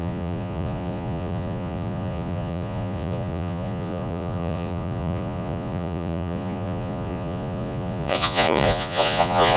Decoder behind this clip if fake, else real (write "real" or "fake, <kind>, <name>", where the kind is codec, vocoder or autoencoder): fake, vocoder, Vocos